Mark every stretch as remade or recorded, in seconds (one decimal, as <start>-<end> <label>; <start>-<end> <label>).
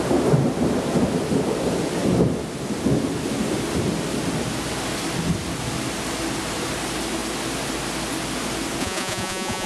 0.0-8.8 recorded; 8.8-9.7 remade